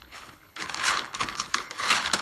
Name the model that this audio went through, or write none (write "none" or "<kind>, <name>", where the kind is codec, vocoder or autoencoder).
codec, HILCodec